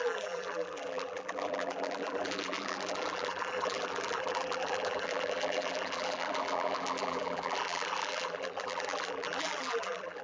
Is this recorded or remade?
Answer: remade